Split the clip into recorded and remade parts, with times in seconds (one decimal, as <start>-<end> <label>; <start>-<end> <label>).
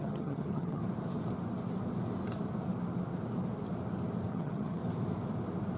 0.0-0.8 remade; 0.8-4.3 recorded; 4.3-4.8 remade; 4.8-5.8 recorded